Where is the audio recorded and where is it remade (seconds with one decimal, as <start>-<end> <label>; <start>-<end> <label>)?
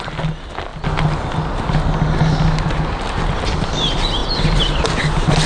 0.0-4.2 recorded; 4.2-4.8 remade; 4.8-5.5 recorded